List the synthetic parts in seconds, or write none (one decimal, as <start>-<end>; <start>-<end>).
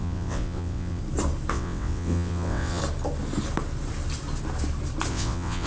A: 0.0-1.0; 1.5-2.8; 5.1-5.7